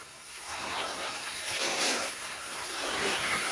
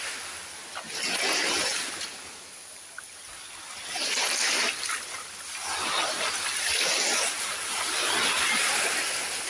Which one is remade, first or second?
first